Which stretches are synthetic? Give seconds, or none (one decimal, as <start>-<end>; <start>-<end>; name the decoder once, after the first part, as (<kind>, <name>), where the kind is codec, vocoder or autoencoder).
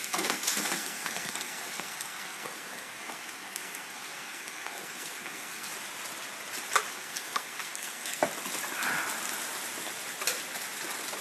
0.0-5.7 (codec, SNAC); 6.9-8.2